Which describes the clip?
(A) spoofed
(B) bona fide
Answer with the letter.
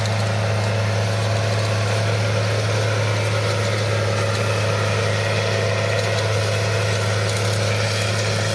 B